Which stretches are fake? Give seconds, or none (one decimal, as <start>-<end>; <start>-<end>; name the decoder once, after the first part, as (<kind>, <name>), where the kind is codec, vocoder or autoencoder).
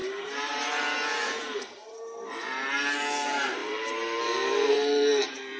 0.0-5.6 (vocoder, BigVGAN v2)